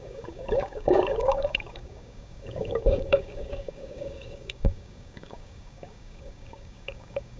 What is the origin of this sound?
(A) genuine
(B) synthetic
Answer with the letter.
B